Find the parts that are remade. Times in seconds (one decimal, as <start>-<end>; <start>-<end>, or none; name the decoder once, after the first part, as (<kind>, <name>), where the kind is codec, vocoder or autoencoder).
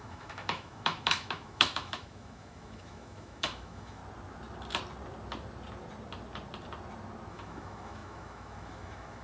0.0-4.0 (autoencoder, DAC-VAE); 7.3-9.2